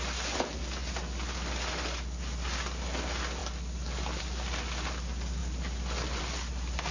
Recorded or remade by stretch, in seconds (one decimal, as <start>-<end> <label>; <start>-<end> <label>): 0.0-6.9 recorded